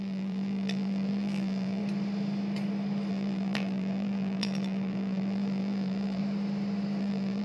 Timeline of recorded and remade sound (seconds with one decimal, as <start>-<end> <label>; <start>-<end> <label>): 0.0-1.8 remade; 1.8-3.1 recorded; 3.1-6.2 remade; 6.2-7.0 recorded; 7.0-7.4 remade